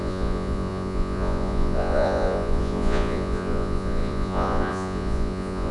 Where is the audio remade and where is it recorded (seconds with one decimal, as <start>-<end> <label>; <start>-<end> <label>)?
0.0-5.7 remade

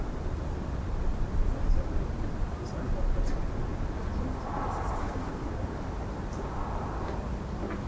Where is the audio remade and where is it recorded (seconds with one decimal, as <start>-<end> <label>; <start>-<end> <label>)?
0.0-5.0 recorded; 5.0-5.5 remade; 5.5-7.9 recorded

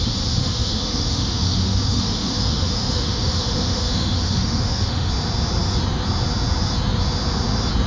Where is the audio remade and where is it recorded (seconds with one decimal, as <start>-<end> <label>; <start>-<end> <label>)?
0.0-0.4 recorded; 0.4-5.1 remade; 5.1-7.9 recorded

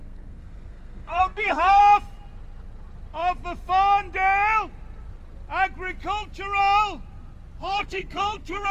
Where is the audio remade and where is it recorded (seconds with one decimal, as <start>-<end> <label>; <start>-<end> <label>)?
0.0-1.8 remade; 1.8-7.6 recorded; 7.6-8.7 remade

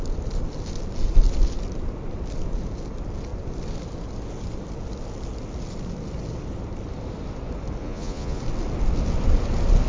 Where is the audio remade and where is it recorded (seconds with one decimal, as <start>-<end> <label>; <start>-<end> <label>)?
0.0-7.8 recorded; 7.8-8.4 remade; 8.4-9.9 recorded

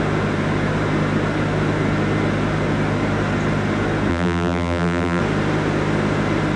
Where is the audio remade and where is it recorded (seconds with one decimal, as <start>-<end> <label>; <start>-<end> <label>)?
0.0-4.1 recorded; 4.1-5.2 remade; 5.2-6.6 recorded